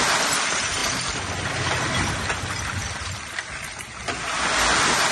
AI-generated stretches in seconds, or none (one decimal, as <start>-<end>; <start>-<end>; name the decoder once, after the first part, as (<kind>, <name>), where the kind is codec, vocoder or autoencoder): 2.8-4.0 (vocoder, BigVGAN v2)